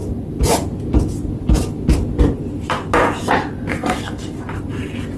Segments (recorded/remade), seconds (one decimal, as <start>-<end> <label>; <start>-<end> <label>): 0.0-3.7 recorded; 3.7-4.4 remade; 4.4-5.2 recorded